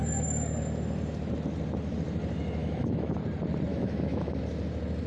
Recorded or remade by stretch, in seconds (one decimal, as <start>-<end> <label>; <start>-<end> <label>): 0.0-2.6 recorded; 2.6-3.1 remade; 3.1-3.7 recorded; 3.7-4.4 remade; 4.4-5.1 recorded